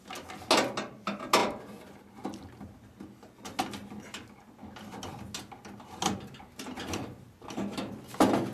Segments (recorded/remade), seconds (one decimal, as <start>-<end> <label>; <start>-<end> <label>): 0.0-8.5 recorded